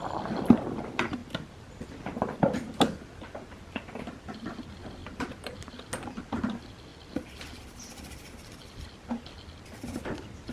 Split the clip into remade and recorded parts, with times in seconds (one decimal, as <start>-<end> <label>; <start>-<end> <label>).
0.0-1.2 remade; 1.2-4.2 recorded; 4.2-5.0 remade; 5.0-6.5 recorded; 6.5-6.9 remade; 6.9-9.8 recorded; 9.8-10.5 remade